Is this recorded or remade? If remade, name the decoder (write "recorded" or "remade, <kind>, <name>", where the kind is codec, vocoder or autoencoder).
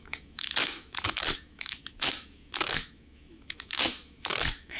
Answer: remade, autoencoder, DAC-VAE